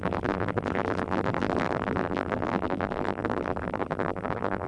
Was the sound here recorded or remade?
remade